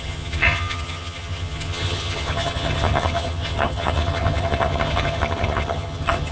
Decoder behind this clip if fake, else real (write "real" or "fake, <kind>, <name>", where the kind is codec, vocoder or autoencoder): fake, vocoder, HiFi-GAN